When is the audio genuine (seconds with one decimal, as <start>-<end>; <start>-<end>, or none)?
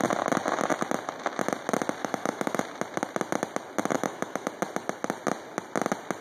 0.0-2.0; 2.6-3.9; 4.5-6.2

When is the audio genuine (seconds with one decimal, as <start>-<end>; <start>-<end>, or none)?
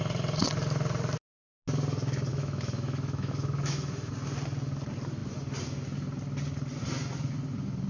0.0-2.3; 4.1-7.9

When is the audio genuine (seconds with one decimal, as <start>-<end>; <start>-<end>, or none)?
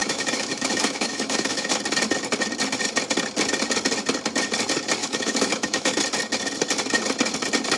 1.7-5.0; 6.0-7.8